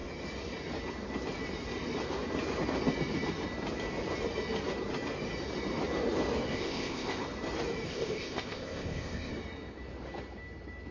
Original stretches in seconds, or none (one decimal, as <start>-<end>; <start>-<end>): 0.0-6.5; 7.2-7.9; 9.3-10.9